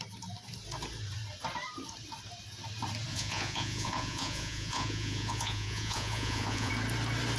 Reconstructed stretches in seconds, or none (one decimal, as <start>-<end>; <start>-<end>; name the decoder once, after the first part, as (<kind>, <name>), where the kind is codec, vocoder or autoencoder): 3.1-6.7 (vocoder, Vocos)